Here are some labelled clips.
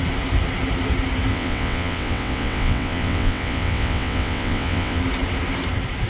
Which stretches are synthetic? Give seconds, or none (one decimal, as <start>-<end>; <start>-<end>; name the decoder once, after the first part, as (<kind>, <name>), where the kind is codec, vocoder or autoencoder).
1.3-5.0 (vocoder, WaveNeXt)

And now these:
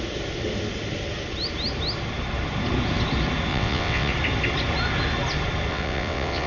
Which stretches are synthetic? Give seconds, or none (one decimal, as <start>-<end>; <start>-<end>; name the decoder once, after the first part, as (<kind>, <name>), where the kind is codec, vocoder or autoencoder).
3.5-4.1 (vocoder, WaveNeXt); 5.7-6.5

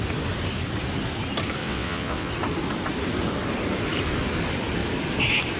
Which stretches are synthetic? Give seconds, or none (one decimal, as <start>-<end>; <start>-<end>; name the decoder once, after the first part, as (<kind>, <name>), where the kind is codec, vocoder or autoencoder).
1.6-2.3 (vocoder, WaveNeXt)

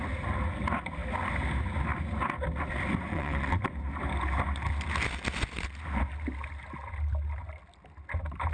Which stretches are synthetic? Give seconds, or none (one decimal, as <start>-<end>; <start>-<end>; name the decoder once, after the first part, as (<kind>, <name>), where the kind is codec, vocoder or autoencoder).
3.1-3.6 (vocoder, WaveNeXt)